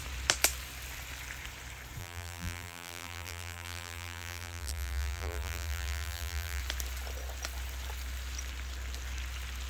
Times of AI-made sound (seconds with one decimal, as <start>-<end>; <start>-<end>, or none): 2.0-6.6